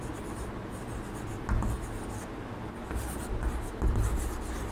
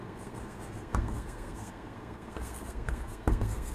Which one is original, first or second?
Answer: first